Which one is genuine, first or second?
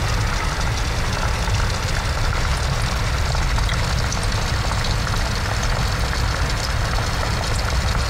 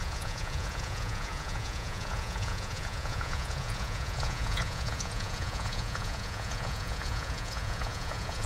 first